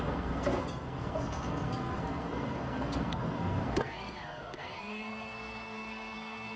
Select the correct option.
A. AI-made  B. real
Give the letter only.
A